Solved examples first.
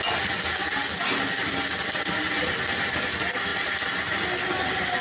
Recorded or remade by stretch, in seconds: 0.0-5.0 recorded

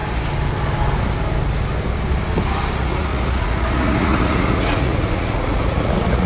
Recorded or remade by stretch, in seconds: 0.0-2.8 recorded; 2.8-6.3 remade

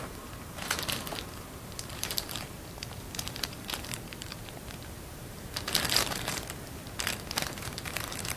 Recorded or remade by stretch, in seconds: 0.0-6.8 remade; 6.8-7.4 recorded; 7.4-8.4 remade